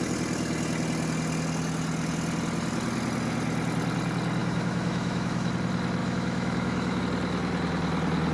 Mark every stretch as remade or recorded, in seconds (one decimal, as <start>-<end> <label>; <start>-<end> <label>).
0.0-4.4 recorded; 4.4-5.5 remade; 5.5-6.0 recorded; 6.0-7.0 remade; 7.0-8.3 recorded